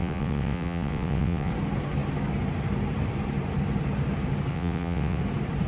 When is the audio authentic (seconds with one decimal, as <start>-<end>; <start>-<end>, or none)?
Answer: 1.5-4.5; 5.2-5.7